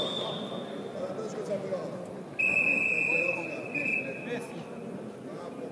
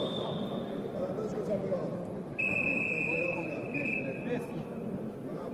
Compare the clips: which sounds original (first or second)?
first